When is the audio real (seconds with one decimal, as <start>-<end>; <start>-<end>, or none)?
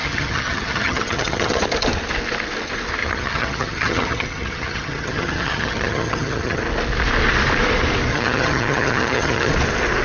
1.6-3.0; 6.6-8.1; 9.5-10.0